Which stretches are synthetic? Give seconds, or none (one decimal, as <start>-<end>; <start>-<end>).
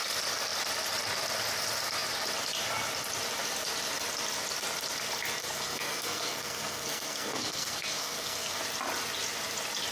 5.4-8.6